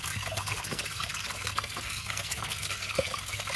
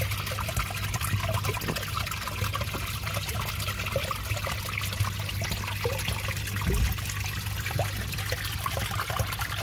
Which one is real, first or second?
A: second